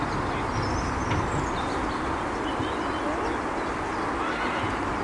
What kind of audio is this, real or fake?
real